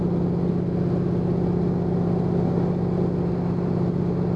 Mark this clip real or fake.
real